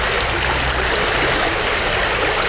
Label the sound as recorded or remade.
recorded